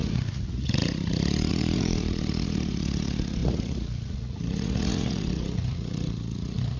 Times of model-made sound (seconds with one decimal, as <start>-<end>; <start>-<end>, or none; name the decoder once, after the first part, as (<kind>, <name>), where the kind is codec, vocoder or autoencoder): 0.0-6.8 (vocoder, Vocos)